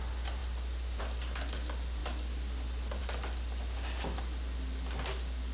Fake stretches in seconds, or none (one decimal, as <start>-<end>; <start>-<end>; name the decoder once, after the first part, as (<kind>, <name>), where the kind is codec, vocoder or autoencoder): none